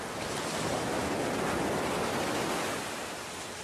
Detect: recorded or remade recorded